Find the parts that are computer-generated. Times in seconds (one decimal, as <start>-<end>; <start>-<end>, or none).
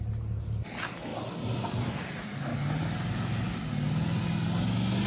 none